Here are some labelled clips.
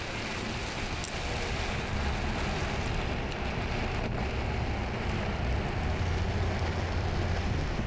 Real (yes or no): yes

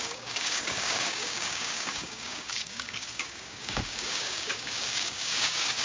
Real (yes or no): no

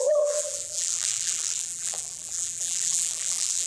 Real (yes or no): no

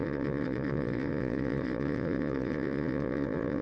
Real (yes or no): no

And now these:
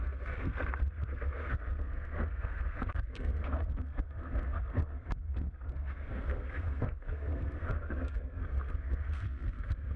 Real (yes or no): no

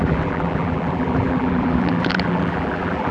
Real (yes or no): no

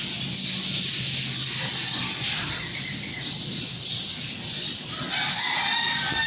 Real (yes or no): yes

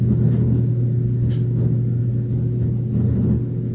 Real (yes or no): yes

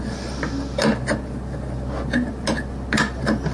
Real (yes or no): yes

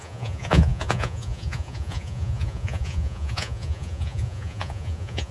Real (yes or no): no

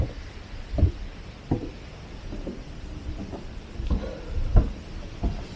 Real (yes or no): yes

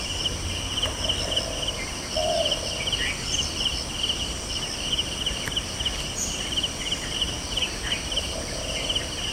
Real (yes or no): yes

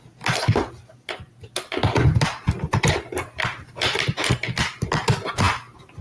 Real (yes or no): yes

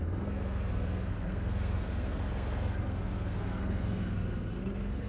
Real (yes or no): no